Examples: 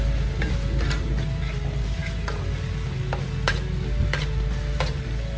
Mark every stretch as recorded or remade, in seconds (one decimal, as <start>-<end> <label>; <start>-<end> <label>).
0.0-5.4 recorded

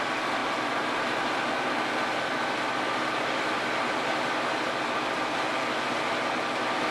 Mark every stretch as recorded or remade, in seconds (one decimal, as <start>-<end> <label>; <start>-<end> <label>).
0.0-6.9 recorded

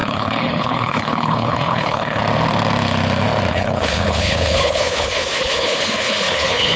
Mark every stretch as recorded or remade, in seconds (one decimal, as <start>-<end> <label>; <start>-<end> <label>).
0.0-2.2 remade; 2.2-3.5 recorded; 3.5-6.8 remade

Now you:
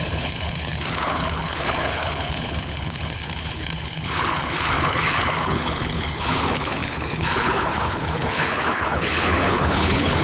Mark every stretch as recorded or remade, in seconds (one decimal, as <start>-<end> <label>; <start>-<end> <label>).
0.0-10.2 remade

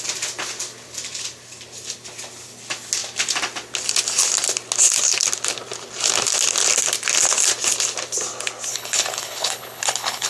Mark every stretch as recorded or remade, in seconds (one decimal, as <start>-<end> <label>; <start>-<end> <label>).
0.0-8.7 recorded; 8.7-10.3 remade

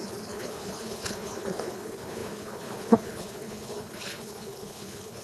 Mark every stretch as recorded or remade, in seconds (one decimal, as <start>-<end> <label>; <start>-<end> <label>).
0.0-5.2 remade

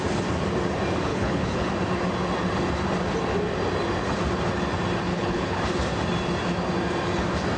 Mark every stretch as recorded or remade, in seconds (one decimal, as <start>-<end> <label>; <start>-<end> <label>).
0.0-1.1 recorded; 1.1-1.7 remade; 1.7-5.1 recorded; 5.1-5.6 remade; 5.6-7.6 recorded

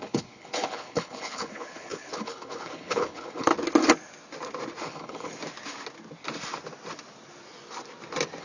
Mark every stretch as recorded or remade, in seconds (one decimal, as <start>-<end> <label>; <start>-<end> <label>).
0.0-3.5 remade; 3.5-4.8 recorded; 4.8-5.3 remade; 5.3-8.4 recorded